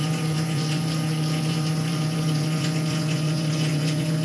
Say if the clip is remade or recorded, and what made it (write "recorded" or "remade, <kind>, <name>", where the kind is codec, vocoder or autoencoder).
remade, vocoder, Vocos